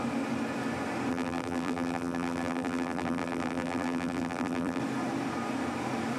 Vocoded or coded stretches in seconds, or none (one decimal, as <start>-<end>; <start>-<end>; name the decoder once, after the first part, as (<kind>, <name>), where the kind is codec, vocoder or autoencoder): 1.1-4.8 (vocoder, BigVGAN v2)